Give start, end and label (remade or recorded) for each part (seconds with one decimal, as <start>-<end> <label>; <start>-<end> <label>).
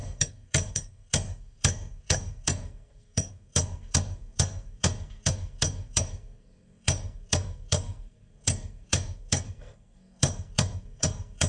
0.0-11.5 remade